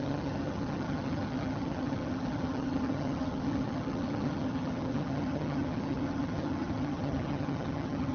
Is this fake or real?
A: fake